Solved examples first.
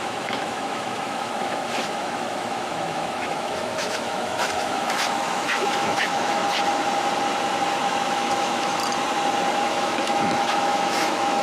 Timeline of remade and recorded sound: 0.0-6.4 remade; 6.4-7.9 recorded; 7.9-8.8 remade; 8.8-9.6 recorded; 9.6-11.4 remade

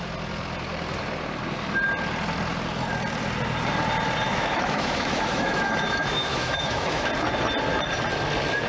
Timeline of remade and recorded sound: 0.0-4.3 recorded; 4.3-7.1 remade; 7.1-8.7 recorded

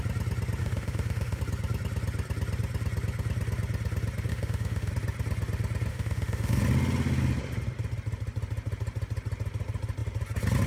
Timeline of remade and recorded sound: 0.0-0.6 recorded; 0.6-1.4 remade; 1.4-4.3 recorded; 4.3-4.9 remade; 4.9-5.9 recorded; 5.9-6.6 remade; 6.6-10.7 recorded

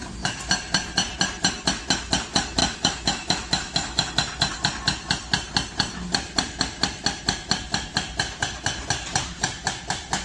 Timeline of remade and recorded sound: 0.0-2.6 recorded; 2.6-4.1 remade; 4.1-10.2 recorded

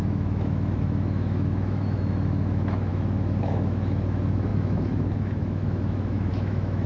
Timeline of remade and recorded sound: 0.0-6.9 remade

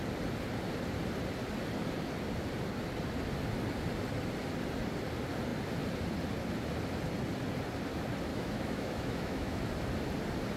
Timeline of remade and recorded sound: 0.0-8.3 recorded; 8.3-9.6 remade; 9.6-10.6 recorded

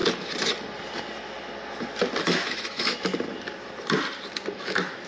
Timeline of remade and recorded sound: 0.0-2.2 recorded; 2.2-3.1 remade; 3.1-4.5 recorded; 4.5-5.1 remade

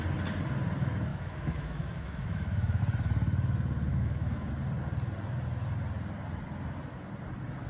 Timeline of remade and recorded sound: 0.0-1.1 recorded; 1.1-2.8 remade; 2.8-3.9 recorded; 3.9-4.5 remade; 4.5-7.7 recorded